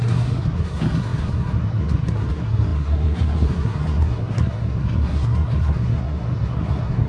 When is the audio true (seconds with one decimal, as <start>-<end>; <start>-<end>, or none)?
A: none